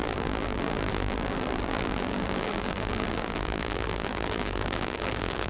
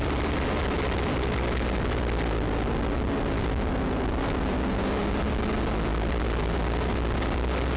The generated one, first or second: first